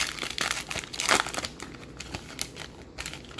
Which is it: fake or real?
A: real